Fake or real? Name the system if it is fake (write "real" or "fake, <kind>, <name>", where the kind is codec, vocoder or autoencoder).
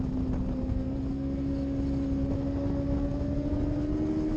real